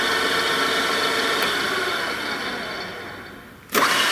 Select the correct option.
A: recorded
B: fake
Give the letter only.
A